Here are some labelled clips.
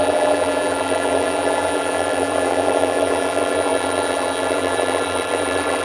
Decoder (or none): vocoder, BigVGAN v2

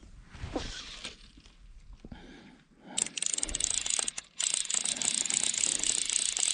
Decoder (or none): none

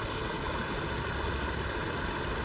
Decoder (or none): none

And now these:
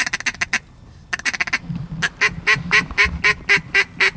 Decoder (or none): none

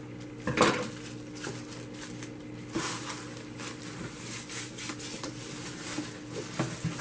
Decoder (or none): none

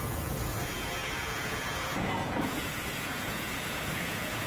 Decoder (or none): vocoder, Vocos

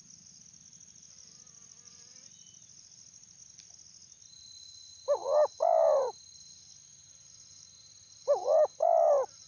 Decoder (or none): none